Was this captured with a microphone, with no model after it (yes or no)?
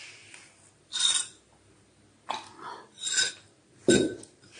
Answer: yes